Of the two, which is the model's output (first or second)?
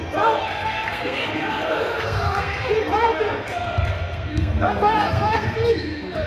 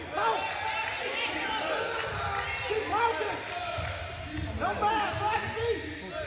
first